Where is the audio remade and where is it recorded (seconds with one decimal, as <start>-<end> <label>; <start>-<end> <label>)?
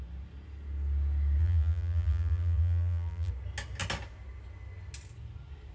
0.0-1.4 recorded; 1.4-3.3 remade; 3.3-5.7 recorded